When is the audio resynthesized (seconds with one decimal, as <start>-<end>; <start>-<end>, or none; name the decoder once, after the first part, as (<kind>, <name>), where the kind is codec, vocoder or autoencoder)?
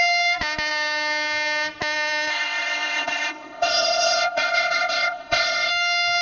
2.3-5.7 (codec, ZipCodec)